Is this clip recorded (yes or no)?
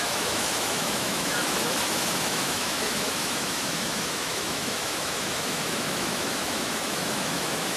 no